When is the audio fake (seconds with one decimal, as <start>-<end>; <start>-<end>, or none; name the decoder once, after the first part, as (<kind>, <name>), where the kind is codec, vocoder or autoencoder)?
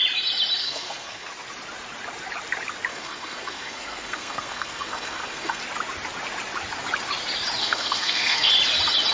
0.6-1.3 (codec, SNAC); 2.9-5.6; 7.6-8.5